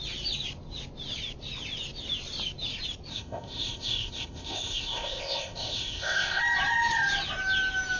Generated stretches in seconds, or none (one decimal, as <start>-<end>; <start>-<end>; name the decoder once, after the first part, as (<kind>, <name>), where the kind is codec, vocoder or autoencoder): 3.1-6.4 (codec, ZipCodec)